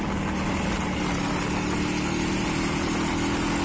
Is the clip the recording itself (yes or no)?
yes